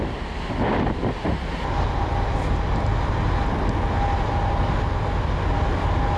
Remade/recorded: recorded